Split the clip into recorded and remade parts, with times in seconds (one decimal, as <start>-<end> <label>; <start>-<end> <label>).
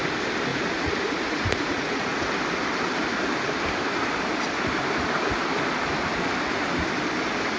0.0-0.5 recorded; 0.5-2.3 remade; 2.3-7.6 recorded